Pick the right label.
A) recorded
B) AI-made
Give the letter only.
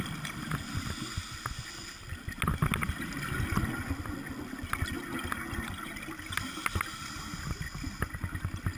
A